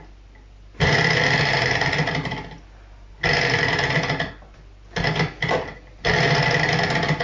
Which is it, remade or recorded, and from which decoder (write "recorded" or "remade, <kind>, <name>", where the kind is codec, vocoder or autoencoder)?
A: recorded